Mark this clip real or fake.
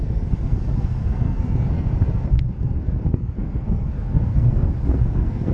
fake